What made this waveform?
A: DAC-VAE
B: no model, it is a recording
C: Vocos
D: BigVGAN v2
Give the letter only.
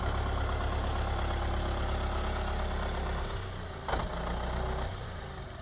B